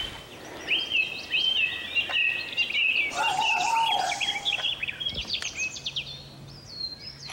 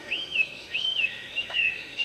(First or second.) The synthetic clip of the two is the second